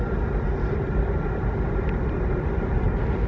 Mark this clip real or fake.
real